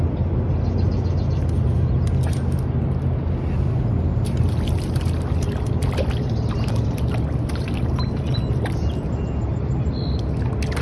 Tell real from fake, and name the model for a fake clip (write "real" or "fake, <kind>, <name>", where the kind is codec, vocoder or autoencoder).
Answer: real